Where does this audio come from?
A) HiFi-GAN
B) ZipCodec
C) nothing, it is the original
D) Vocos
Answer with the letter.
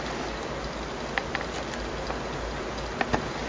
C